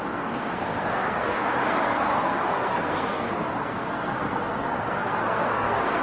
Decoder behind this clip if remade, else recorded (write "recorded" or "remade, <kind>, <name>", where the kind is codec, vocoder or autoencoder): remade, codec, SNAC